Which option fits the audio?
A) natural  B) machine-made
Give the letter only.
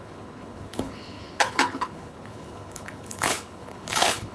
B